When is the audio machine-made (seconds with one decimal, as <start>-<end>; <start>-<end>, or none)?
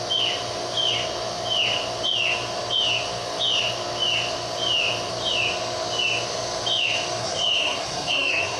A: 7.2-8.6